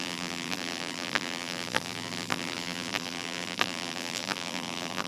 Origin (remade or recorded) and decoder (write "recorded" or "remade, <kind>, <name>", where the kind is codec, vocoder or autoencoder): remade, vocoder, BigVGAN v2